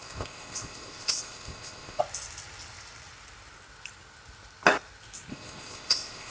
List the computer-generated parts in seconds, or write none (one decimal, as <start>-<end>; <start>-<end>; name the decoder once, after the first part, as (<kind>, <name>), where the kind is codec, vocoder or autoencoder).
0.0-2.0 (codec, ZipCodec); 5.3-6.3